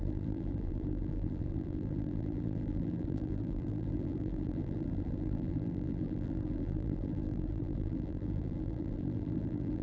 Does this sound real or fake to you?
fake